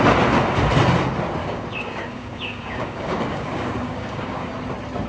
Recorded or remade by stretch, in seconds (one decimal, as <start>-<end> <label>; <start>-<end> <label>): 0.0-1.4 recorded; 1.4-4.5 remade; 4.5-5.1 recorded